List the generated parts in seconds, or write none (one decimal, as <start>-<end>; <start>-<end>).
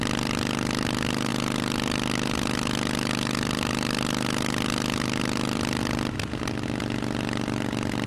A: none